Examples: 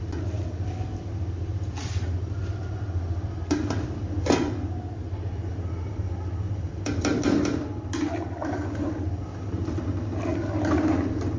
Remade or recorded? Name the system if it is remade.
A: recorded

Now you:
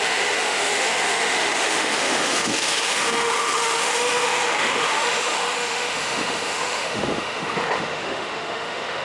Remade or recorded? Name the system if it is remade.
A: remade, autoencoder, DAC-VAE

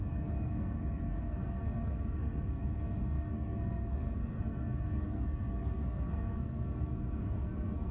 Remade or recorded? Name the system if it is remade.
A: remade, codec, SNAC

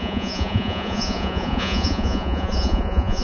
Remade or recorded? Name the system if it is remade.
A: remade, vocoder, Vocos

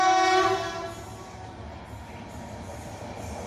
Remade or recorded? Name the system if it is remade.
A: recorded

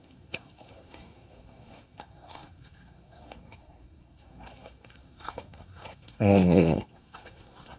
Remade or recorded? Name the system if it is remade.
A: remade, codec, SNAC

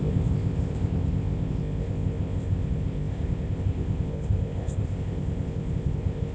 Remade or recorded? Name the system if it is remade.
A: remade, codec, ZipCodec